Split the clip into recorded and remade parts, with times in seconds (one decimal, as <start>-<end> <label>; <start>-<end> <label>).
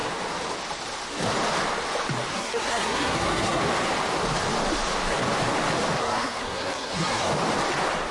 0.0-2.3 recorded; 2.3-3.6 remade; 3.6-6.0 recorded; 6.0-7.3 remade; 7.3-8.1 recorded